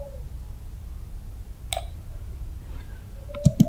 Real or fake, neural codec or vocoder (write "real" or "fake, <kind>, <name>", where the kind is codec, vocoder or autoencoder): real